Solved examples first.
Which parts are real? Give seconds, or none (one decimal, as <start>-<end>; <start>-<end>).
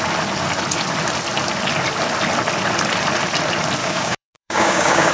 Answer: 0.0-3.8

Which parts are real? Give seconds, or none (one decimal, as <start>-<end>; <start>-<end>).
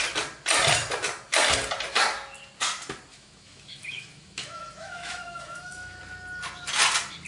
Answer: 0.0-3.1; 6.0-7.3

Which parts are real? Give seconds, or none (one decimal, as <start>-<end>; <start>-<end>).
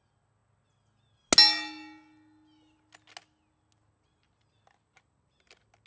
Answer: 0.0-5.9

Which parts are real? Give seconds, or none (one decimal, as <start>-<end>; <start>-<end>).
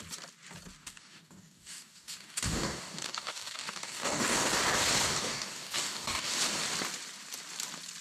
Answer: 0.0-0.8; 4.5-5.1; 6.4-8.0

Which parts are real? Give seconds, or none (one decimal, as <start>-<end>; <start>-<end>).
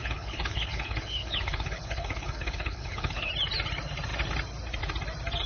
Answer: 3.3-5.5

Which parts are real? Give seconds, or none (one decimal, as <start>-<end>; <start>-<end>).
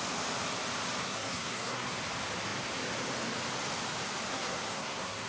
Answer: 0.0-1.0; 1.9-4.3